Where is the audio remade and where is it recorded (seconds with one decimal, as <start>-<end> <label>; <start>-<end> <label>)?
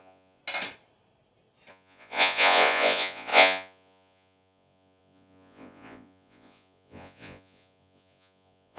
0.0-0.4 remade; 0.4-1.7 recorded; 1.7-8.8 remade